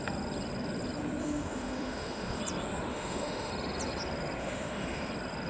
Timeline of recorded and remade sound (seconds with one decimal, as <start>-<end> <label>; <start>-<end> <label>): 0.0-1.2 recorded; 1.2-2.4 remade; 2.4-2.9 recorded; 2.9-3.5 remade; 3.5-4.4 recorded; 4.4-5.1 remade; 5.1-5.5 recorded